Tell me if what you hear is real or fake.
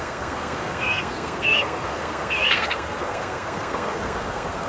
fake